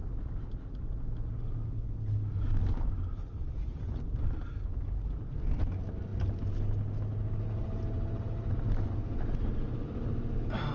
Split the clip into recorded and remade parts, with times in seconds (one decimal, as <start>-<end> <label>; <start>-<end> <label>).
0.0-10.7 recorded